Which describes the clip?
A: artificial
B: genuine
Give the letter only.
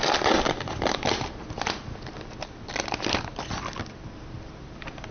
B